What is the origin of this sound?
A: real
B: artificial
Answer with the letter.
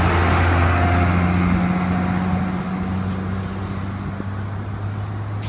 A